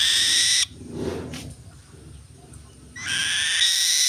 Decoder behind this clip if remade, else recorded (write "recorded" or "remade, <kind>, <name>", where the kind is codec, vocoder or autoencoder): recorded